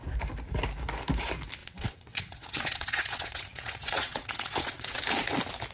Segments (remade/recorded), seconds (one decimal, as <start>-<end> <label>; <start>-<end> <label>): 0.0-1.6 recorded; 1.6-5.0 remade; 5.0-5.7 recorded